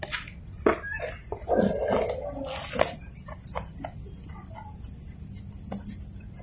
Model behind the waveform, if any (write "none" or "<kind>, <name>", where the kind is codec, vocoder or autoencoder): none